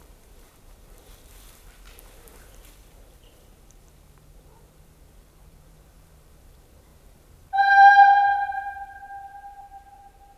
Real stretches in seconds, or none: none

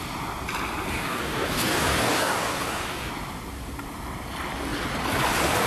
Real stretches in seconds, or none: 0.0-0.9; 3.1-5.7